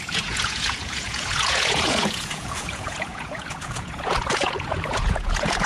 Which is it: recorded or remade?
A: remade